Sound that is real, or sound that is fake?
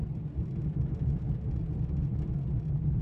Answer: real